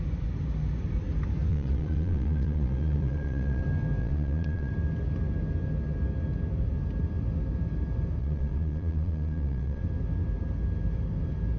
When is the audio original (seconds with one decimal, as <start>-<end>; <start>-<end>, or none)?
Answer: 0.0-1.5; 3.6-4.0; 4.7-8.2; 9.8-11.6